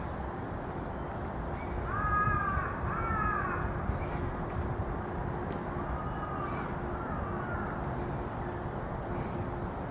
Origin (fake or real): real